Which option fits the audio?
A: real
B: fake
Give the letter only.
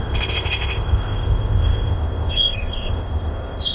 B